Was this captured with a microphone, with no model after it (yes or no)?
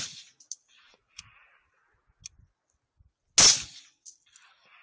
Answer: yes